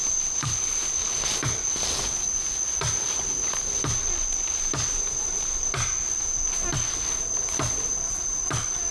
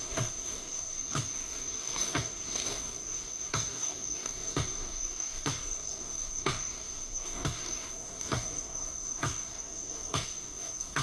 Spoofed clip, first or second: second